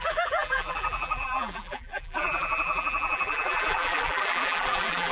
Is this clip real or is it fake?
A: fake